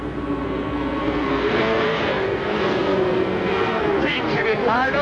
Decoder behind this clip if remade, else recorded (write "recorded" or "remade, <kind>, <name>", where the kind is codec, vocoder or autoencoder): remade, codec, SNAC